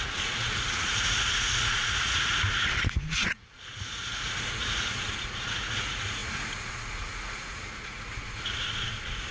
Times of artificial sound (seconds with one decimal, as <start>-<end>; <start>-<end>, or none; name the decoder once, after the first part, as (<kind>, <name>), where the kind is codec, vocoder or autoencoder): 0.0-9.3 (vocoder, Vocos)